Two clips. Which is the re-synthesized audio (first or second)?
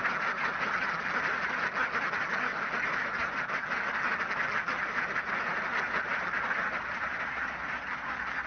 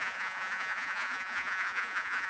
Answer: second